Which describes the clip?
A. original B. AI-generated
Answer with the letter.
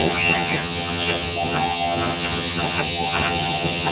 B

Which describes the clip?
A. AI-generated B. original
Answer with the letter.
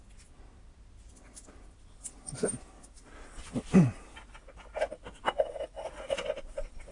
B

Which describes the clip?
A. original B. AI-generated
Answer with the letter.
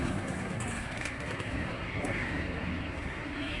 B